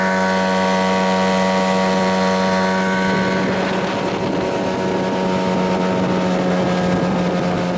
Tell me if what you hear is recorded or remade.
recorded